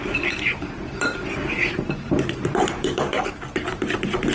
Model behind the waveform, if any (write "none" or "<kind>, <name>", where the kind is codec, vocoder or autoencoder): vocoder, BigVGAN v2